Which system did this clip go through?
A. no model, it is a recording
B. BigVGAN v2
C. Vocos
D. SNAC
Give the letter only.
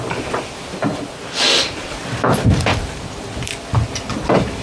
B